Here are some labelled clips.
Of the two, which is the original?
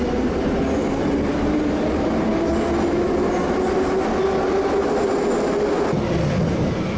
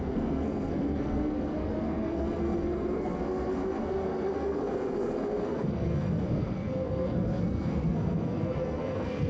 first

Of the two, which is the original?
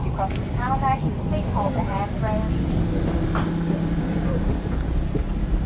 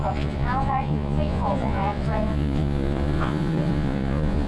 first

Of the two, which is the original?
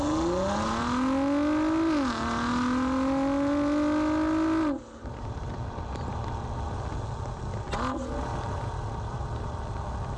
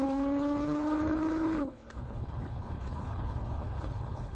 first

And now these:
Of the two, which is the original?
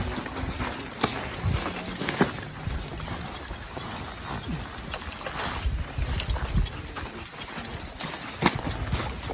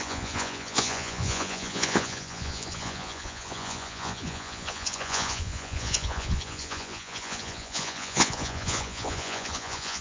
first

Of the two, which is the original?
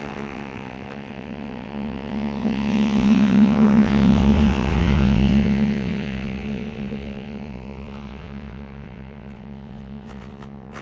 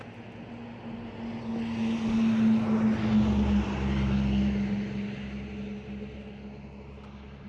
second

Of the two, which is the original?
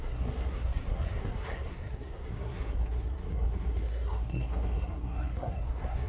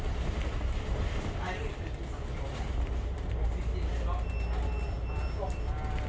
second